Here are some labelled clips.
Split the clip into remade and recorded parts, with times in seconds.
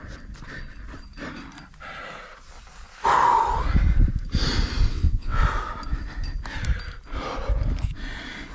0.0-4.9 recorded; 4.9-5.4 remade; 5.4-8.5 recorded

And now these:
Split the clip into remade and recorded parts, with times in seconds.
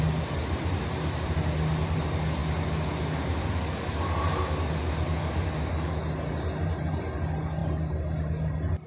0.0-8.9 recorded